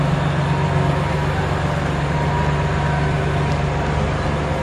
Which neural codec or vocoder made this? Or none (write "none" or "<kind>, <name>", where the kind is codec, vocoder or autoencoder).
none